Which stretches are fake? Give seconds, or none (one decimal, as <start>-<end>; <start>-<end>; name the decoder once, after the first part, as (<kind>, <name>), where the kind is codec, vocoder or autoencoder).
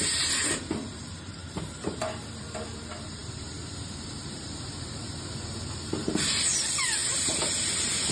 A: 0.0-8.1 (vocoder, BigVGAN v2)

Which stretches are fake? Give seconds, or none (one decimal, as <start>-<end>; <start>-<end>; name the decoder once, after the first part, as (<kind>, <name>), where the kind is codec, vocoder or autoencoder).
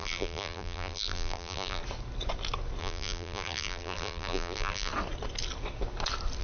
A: 0.0-1.8 (vocoder, BigVGAN v2); 2.8-4.9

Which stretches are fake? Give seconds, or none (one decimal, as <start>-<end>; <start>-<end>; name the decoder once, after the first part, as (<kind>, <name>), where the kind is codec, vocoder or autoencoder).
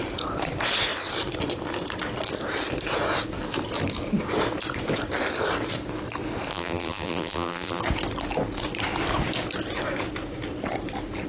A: 6.5-7.8 (vocoder, BigVGAN v2)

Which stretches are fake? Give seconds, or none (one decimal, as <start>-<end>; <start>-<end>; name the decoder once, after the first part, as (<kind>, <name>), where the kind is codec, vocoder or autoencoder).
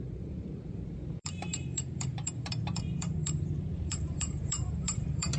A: 0.0-5.4 (vocoder, BigVGAN v2)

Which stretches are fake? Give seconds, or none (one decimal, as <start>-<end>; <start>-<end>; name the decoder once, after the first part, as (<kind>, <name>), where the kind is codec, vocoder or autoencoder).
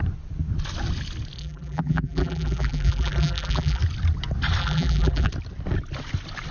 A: 1.4-3.8 (vocoder, BigVGAN v2); 4.6-5.3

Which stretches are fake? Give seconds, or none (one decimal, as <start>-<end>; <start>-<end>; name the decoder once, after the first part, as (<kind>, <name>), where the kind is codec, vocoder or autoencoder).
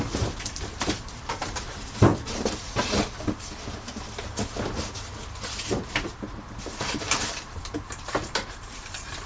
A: 0.0-2.1 (vocoder, BigVGAN v2); 6.6-9.3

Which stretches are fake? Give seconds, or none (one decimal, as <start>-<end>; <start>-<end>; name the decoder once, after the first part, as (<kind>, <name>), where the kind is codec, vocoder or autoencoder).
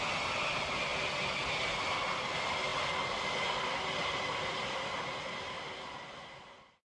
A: none